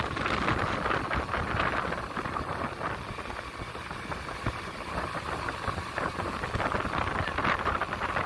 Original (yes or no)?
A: yes